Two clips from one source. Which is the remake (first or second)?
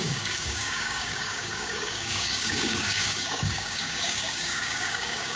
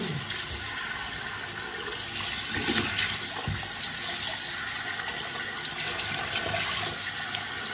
first